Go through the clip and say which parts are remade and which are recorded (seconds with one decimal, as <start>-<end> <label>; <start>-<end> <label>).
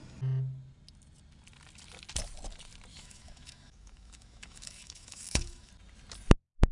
0.0-2.9 recorded; 2.9-5.7 remade; 5.7-6.7 recorded